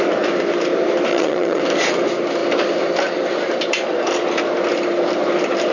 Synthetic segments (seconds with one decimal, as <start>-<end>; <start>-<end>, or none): 1.1-1.6